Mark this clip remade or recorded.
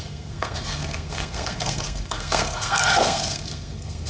remade